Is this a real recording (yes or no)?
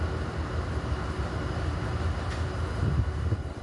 yes